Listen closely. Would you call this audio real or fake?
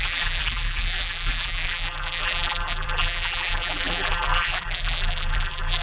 fake